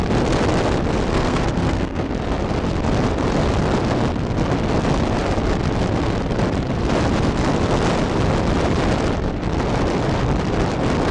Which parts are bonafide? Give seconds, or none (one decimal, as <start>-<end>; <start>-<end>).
0.0-1.1; 2.1-11.1

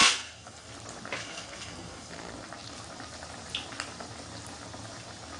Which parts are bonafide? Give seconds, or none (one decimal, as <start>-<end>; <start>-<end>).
0.7-1.2; 2.1-5.4

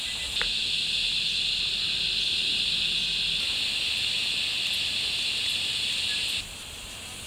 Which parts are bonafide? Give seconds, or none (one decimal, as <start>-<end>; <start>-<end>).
0.0-7.3

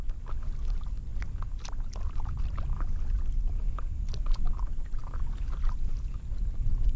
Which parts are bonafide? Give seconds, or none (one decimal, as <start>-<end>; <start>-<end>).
0.0-7.0